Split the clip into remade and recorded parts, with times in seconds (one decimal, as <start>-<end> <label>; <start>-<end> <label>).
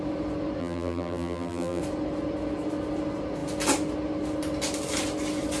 0.0-0.6 recorded; 0.6-1.8 remade; 1.8-5.6 recorded